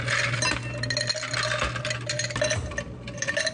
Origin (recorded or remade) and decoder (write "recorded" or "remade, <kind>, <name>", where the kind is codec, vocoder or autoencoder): recorded